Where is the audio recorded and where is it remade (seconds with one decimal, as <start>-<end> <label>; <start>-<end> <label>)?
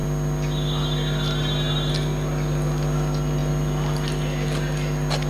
0.0-5.3 recorded